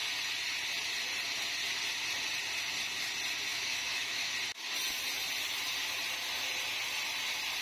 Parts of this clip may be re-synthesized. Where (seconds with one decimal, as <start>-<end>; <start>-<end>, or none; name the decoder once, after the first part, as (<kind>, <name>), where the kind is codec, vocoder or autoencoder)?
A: 3.5-4.3 (autoencoder, DAC-VAE)